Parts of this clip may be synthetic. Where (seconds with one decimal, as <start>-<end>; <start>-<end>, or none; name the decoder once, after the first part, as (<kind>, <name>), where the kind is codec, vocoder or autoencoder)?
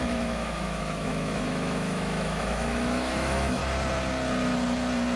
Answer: 0.0-3.6 (autoencoder, DAC-VAE)